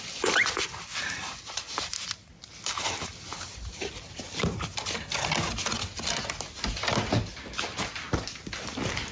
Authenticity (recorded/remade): recorded